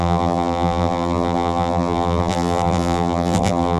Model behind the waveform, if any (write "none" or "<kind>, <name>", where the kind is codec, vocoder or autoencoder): vocoder, BigVGAN v2